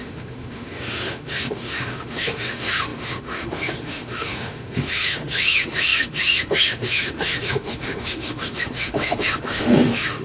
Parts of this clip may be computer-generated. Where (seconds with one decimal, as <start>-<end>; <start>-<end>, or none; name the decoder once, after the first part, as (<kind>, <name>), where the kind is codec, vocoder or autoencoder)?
0.0-10.2 (autoencoder, DAC-VAE)